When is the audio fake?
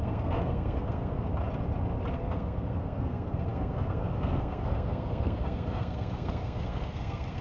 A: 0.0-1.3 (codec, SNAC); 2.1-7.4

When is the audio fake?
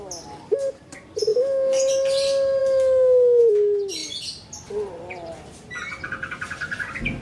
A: 1.3-1.9 (autoencoder, DAC-VAE); 2.6-3.4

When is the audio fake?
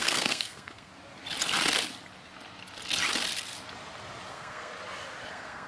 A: 0.0-0.9 (codec, SNAC); 4.3-4.7; 5.3-5.7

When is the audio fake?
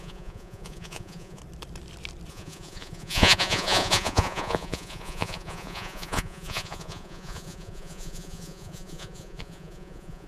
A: 0.0-1.4 (vocoder, Vocos); 2.3-10.3